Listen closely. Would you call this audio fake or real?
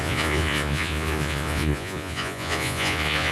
fake